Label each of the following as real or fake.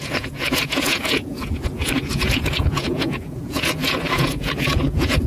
fake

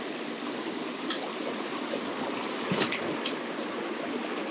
real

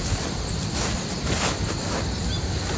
real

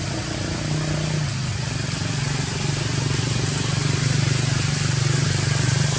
real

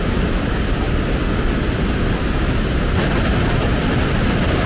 real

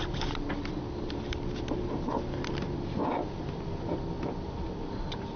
real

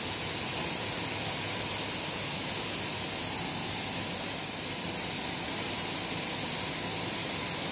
real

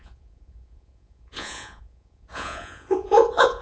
fake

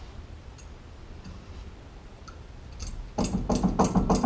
real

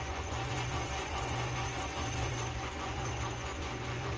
fake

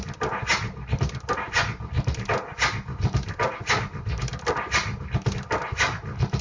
real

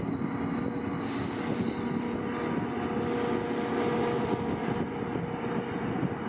real